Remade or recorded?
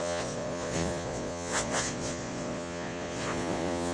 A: remade